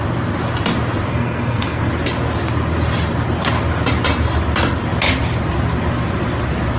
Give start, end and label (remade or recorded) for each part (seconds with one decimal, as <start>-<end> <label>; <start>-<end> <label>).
0.0-1.1 recorded; 1.1-1.9 remade; 1.9-6.8 recorded